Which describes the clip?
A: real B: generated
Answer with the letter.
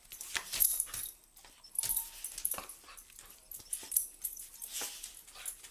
A